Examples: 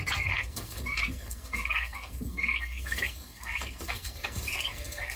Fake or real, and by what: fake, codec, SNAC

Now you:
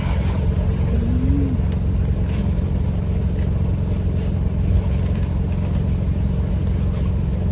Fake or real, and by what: real